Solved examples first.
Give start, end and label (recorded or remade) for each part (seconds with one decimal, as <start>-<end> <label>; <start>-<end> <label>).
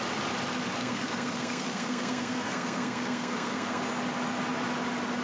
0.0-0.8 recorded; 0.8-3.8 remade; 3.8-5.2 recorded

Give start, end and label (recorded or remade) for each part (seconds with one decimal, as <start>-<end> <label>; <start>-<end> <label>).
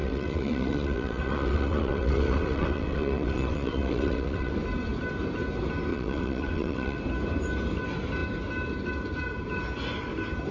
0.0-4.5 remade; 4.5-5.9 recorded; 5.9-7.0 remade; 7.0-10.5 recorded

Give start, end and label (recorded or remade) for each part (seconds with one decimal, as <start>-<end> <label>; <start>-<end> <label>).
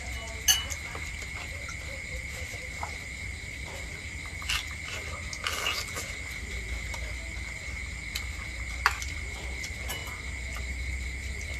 0.0-11.6 recorded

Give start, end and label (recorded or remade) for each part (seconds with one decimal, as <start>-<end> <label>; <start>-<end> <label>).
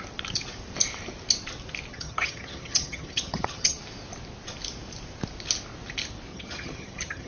0.0-1.9 recorded; 1.9-3.8 remade; 3.8-6.3 recorded; 6.3-7.3 remade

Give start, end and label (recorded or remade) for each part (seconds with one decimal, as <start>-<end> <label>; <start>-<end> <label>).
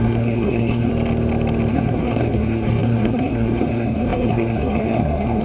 0.0-0.9 remade; 0.9-1.7 recorded; 1.7-5.4 remade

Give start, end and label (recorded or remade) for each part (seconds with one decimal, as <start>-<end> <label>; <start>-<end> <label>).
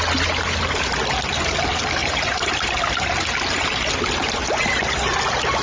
0.0-2.0 recorded; 2.0-2.5 remade; 2.5-5.6 recorded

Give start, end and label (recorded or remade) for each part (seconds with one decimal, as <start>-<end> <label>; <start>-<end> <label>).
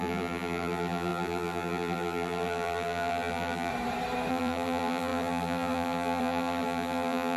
0.0-3.7 remade; 3.7-4.3 recorded; 4.3-7.4 remade